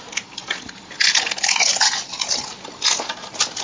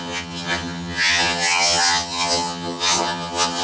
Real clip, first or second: first